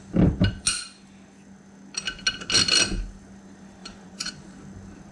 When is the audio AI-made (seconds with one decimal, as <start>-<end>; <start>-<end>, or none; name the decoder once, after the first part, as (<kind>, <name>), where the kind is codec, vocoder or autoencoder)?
3.8-4.3 (vocoder, Vocos)